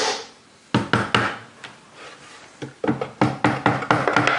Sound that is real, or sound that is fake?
real